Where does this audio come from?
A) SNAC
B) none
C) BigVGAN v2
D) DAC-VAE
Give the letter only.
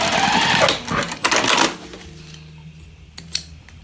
B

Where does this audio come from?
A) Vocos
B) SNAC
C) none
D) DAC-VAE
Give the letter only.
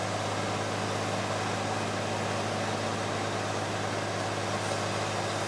C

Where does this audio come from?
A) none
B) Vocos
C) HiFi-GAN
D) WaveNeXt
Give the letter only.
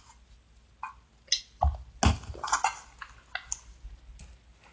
A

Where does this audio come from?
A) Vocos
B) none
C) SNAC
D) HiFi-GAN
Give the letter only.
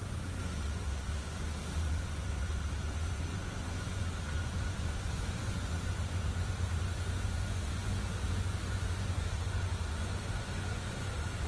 A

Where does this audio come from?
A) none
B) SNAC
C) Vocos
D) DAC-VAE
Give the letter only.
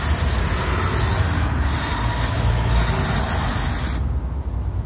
A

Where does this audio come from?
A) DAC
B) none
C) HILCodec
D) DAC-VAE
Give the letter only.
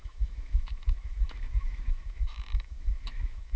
D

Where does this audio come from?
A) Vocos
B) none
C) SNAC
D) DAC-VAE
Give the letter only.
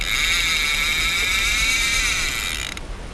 B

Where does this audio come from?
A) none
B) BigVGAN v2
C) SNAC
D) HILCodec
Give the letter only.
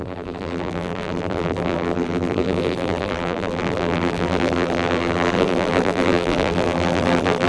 B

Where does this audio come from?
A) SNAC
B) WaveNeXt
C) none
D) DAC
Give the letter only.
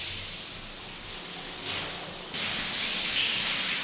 C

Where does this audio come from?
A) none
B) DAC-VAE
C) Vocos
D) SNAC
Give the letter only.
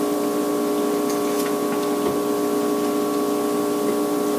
A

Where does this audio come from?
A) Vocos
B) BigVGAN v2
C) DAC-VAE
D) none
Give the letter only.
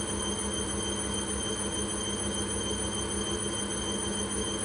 D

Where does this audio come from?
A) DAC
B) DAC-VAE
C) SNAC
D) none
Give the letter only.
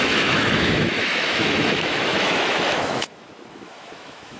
B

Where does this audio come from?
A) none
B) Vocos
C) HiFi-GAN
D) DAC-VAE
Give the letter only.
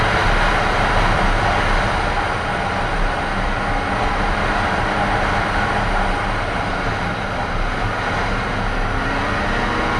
A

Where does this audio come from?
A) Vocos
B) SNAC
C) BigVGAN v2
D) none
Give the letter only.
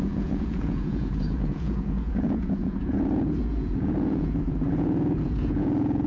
A